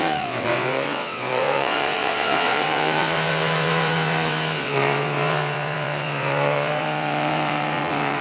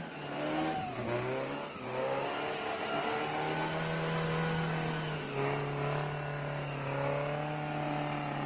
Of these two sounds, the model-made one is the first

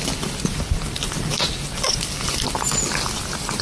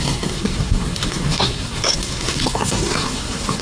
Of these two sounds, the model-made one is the second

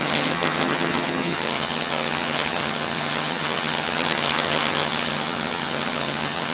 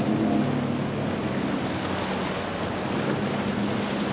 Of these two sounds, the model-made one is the first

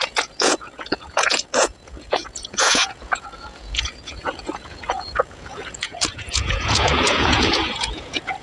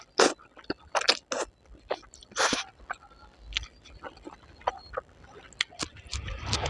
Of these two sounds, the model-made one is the first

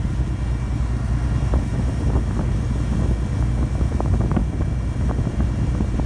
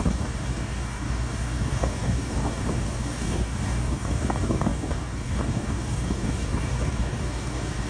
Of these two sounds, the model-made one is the second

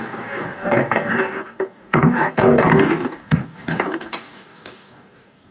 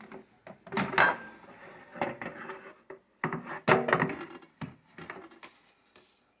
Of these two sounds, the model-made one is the first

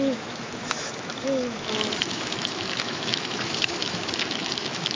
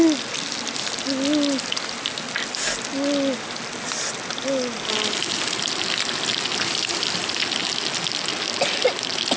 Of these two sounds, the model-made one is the first